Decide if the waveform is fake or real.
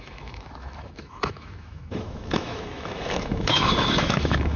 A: fake